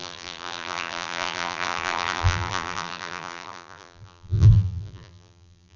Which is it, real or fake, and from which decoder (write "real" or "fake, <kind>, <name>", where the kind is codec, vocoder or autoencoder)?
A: fake, vocoder, BigVGAN v2